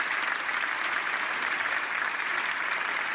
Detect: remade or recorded recorded